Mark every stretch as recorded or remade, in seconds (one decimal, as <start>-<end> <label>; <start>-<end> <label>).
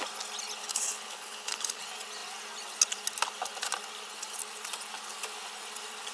0.0-0.6 recorded; 0.6-1.8 remade; 1.8-6.1 recorded